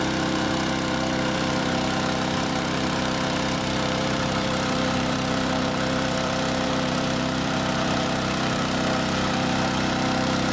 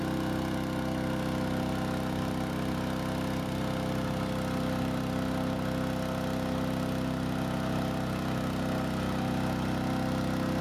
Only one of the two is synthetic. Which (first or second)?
first